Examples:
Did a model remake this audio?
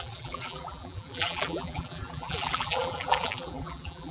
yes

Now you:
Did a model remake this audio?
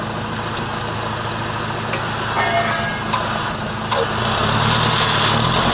no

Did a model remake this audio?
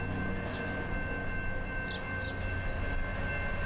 no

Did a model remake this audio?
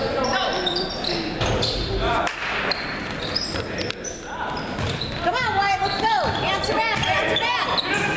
yes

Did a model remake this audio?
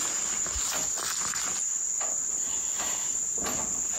no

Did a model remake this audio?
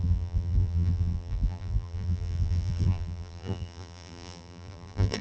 yes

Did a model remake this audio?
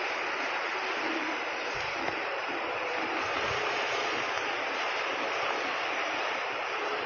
yes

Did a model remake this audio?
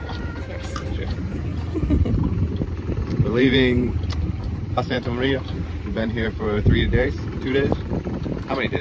yes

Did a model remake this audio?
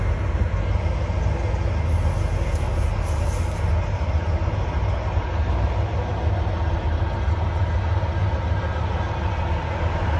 no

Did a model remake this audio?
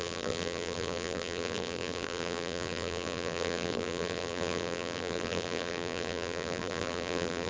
yes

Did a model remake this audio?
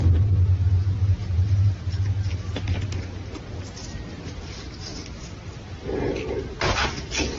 no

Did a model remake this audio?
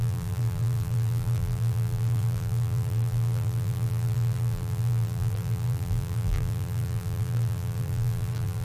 yes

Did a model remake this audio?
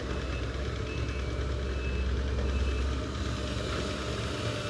no